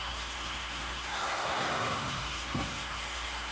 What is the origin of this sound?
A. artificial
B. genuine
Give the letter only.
A